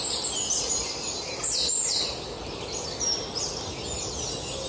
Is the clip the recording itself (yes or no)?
yes